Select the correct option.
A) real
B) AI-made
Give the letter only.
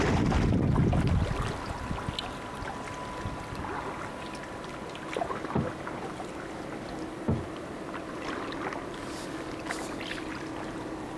A